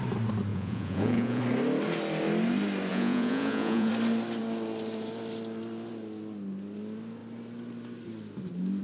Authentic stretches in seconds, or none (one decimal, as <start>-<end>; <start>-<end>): 0.0-0.5; 1.4-2.9; 3.9-8.8